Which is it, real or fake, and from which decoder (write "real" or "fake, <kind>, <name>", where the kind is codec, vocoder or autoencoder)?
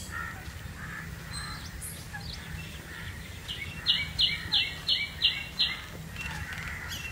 real